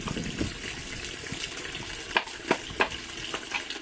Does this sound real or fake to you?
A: real